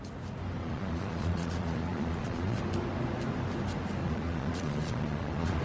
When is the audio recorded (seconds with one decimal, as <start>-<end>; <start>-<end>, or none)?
0.0-0.6; 2.6-4.0